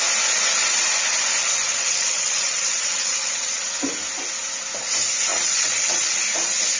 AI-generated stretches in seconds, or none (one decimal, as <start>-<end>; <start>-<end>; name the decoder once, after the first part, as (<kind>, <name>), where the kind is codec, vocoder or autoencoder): 1.7-3.6 (vocoder, WaveNeXt); 5.3-6.2